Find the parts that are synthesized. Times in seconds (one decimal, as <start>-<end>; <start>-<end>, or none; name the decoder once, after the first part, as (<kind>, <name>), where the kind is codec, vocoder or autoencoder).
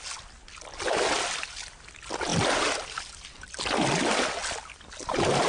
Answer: 2.3-3.0 (vocoder, BigVGAN v2)